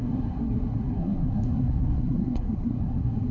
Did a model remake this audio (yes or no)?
yes